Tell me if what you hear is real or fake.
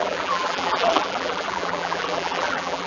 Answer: fake